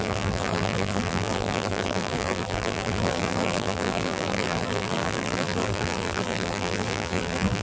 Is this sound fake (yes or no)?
yes